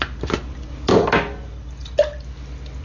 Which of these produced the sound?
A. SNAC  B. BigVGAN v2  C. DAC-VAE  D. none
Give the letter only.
D